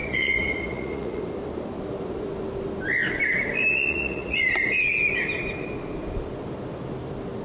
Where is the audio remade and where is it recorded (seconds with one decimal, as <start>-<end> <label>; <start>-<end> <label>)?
0.0-1.2 remade; 1.2-3.7 recorded; 3.7-4.4 remade; 4.4-7.4 recorded